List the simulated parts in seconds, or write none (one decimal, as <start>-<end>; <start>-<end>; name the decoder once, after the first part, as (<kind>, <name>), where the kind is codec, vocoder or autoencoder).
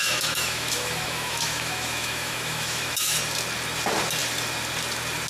0.0-3.2 (autoencoder, DAC-VAE)